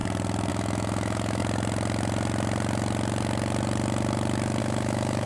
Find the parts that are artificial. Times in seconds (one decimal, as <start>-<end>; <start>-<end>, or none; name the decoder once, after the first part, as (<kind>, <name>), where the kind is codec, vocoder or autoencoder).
0.5-1.4 (autoencoder, DAC-VAE); 4.6-5.3